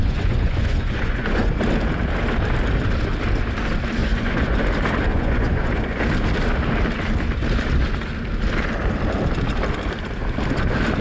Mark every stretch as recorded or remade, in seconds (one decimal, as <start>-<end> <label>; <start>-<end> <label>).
0.0-1.6 remade; 1.6-4.0 recorded; 4.0-4.6 remade; 4.6-5.1 recorded; 5.1-6.0 remade; 6.0-11.0 recorded